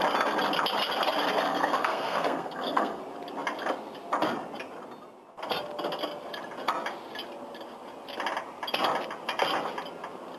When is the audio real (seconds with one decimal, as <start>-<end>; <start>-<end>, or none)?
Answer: 0.0-1.5; 3.0-10.4